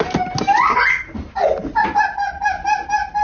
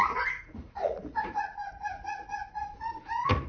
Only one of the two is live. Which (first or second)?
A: first